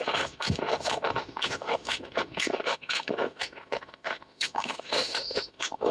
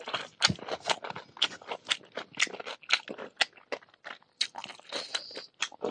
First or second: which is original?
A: second